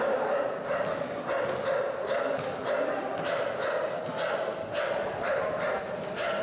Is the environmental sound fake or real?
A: real